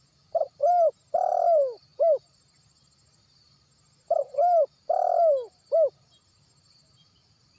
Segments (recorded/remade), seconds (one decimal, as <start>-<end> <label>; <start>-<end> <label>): 0.0-1.3 remade; 1.3-5.9 recorded; 5.9-7.6 remade